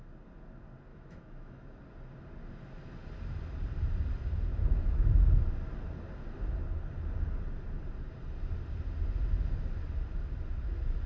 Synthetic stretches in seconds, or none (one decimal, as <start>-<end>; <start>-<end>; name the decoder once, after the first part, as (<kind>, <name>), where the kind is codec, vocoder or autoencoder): 0.9-1.8 (autoencoder, DAC-VAE); 4.5-5.1